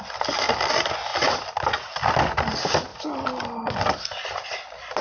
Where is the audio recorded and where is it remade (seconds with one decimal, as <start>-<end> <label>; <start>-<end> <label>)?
0.0-1.1 recorded; 1.1-1.7 remade; 1.7-5.0 recorded